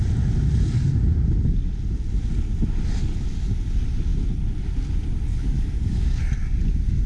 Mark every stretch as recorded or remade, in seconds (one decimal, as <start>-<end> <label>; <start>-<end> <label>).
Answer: 0.0-5.3 recorded; 5.3-6.2 remade; 6.2-7.1 recorded